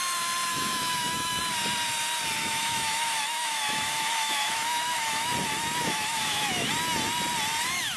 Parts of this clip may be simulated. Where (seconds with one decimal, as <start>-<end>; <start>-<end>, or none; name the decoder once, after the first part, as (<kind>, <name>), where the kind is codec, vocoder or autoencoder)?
0.5-1.4 (autoencoder, DAC-VAE); 2.4-5.3; 5.8-6.7